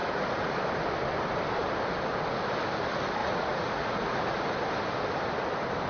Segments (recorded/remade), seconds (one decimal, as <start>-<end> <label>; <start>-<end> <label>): 0.0-0.6 remade; 0.6-3.2 recorded; 3.2-4.4 remade; 4.4-5.9 recorded